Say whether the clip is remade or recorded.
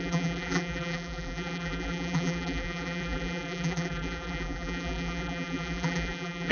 remade